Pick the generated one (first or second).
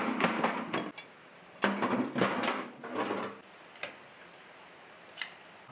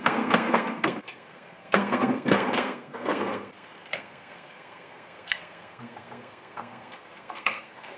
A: second